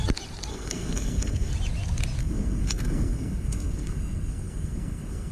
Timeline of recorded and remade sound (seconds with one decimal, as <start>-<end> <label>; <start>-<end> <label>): 0.0-0.5 recorded; 0.5-1.5 remade; 1.5-2.2 recorded; 2.2-5.3 remade